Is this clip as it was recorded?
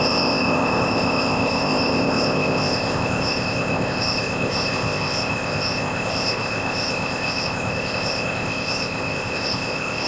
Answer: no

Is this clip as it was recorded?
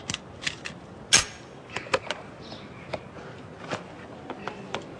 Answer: yes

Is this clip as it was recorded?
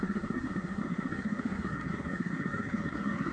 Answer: no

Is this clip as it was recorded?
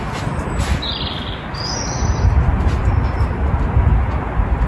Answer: yes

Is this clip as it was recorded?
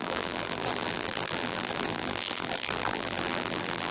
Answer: no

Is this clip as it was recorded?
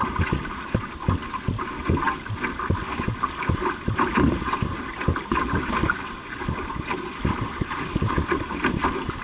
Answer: yes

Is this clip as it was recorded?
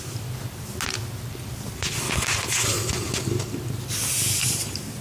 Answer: yes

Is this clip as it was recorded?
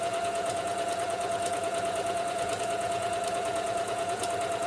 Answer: no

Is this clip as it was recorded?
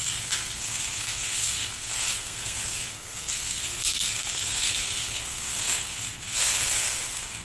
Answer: no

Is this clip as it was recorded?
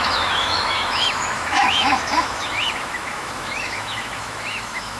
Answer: no